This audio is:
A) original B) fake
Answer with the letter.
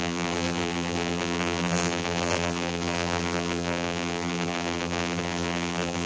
B